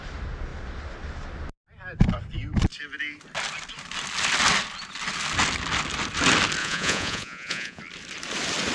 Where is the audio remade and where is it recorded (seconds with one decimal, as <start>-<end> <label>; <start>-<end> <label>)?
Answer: 0.0-6.6 recorded; 6.6-7.8 remade; 7.8-8.7 recorded